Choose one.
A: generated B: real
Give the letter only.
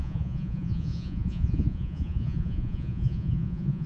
A